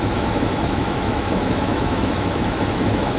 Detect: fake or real fake